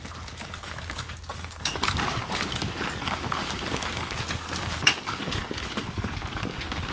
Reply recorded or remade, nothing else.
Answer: remade